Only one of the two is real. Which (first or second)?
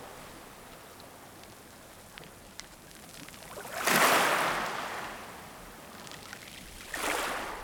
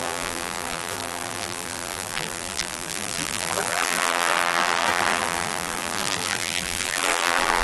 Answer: first